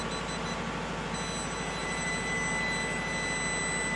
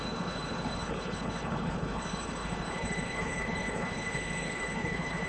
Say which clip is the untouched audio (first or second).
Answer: first